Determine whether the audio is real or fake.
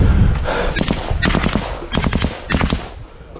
real